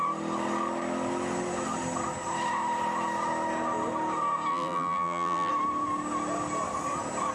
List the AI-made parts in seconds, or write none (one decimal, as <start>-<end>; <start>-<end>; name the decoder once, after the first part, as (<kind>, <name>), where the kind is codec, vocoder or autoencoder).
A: 4.5-5.5 (vocoder, BigVGAN v2)